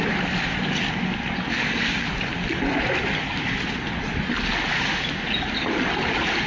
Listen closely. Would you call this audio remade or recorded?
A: recorded